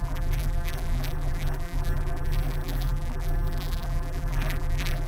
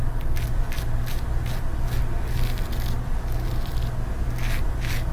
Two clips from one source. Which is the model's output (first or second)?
first